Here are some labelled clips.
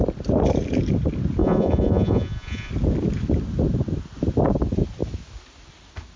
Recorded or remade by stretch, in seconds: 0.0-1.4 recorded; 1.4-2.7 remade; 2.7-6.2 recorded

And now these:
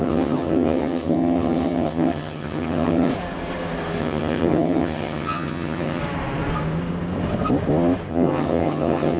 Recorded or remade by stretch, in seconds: 0.0-3.1 remade; 3.1-4.0 recorded; 4.0-6.0 remade; 6.0-8.1 recorded; 8.1-9.2 remade